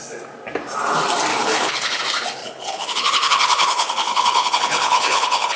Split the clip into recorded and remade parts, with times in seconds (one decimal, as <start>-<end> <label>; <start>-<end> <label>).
0.0-1.3 recorded; 1.3-2.0 remade; 2.0-2.4 recorded; 2.4-5.6 remade